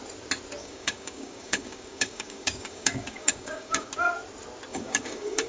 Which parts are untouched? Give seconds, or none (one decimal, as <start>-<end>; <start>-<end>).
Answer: 0.0-0.6; 3.9-4.7